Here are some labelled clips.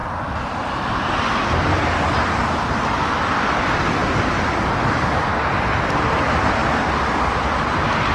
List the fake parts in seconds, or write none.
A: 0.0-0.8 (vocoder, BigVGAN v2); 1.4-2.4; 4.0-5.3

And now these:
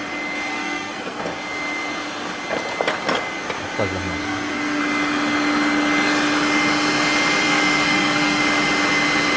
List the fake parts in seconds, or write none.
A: 0.5-1.2 (codec, SNAC); 4.2-4.8; 7.5-8.4

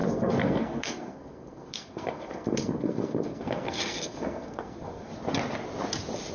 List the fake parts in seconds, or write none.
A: 0.0-5.1 (codec, SNAC)

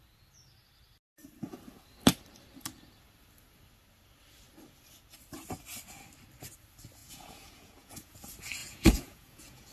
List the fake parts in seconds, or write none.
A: 7.0-8.1 (vocoder, Vocos); 8.6-9.7

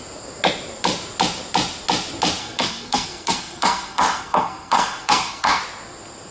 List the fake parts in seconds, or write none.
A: 2.4-5.6 (codec, SNAC)

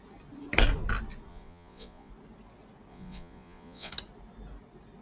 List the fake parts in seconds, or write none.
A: 1.3-2.1 (vocoder, Vocos); 2.9-3.9